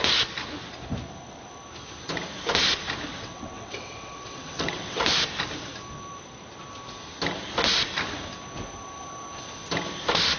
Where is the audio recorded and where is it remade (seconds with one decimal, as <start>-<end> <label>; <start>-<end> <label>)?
0.0-3.1 recorded; 3.1-5.0 remade; 5.0-10.4 recorded